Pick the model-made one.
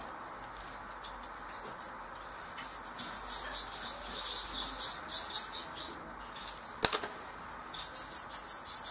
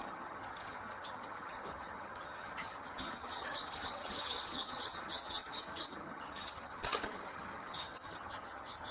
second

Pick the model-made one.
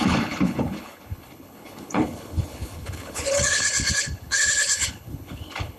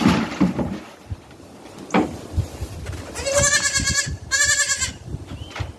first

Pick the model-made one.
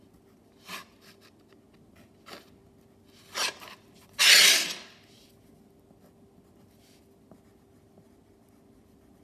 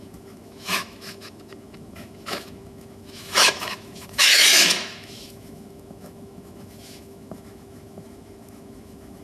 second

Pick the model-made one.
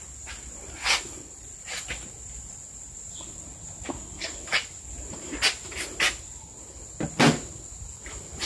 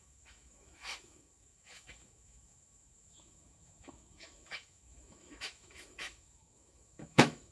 second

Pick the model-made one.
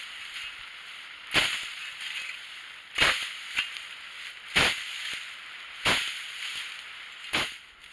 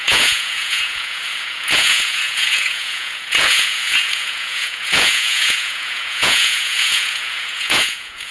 second